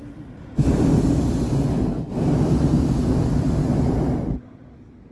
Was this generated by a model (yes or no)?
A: no